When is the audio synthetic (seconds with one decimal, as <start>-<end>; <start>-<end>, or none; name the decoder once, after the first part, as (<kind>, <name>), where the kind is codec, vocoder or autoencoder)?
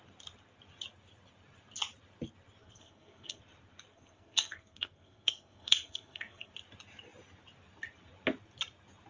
2.6-3.4 (codec, SNAC); 3.9-6.5